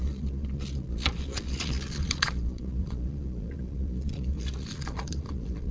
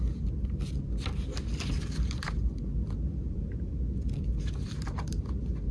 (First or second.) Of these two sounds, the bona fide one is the second